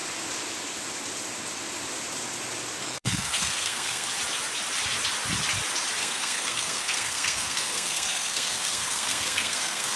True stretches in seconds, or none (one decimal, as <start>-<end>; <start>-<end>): 0.0-2.8; 4.1-6.0